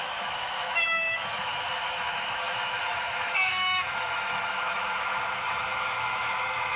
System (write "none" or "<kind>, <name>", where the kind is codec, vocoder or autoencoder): autoencoder, DAC-VAE